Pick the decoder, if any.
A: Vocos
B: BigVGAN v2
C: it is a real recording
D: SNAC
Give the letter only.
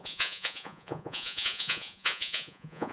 A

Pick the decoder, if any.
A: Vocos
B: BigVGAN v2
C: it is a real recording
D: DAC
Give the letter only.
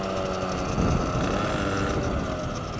C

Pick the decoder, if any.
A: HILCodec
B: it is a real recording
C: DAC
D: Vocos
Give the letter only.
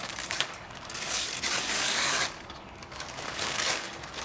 C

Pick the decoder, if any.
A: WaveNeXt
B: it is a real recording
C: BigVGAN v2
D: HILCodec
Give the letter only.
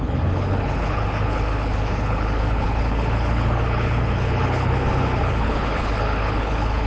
D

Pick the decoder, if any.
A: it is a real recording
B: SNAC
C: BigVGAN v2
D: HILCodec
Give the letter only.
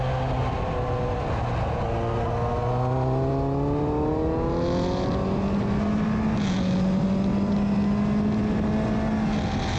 A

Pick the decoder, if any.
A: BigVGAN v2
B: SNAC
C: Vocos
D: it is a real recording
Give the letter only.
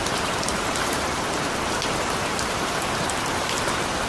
A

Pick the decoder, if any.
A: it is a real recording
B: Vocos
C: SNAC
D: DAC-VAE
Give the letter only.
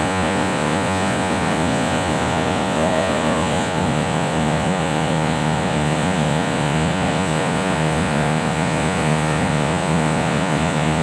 B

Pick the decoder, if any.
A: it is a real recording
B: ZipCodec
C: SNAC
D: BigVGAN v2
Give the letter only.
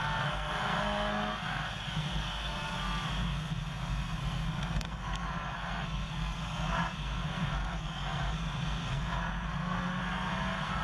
C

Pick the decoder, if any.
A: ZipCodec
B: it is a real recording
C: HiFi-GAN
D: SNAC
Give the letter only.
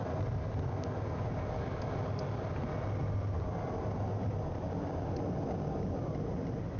B